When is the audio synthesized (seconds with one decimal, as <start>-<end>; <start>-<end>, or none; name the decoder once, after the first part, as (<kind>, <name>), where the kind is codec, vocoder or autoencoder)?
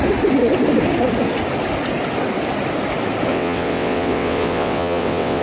3.3-5.4 (vocoder, WaveNeXt)